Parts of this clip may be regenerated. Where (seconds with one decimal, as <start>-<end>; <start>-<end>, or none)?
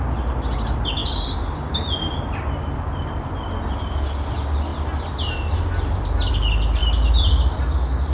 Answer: 1.0-3.3; 6.8-7.6